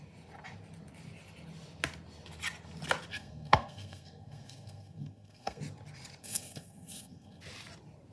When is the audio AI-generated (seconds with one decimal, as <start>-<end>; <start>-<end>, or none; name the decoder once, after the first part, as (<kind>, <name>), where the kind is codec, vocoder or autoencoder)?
3.1-5.6 (codec, SNAC); 6.2-7.4